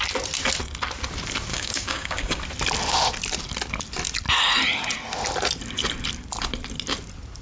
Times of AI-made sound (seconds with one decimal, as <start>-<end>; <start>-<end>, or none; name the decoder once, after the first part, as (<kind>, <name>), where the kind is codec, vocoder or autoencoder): 1.5-2.4 (codec, DAC)